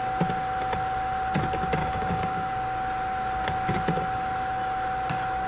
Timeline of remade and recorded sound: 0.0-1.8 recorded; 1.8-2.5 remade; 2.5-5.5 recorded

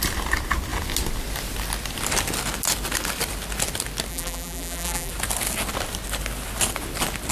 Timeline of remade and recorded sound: 0.0-4.1 recorded; 4.1-5.1 remade; 5.1-7.3 recorded